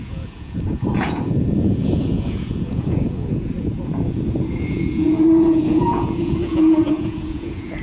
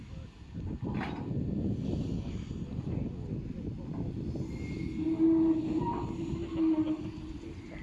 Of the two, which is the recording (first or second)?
second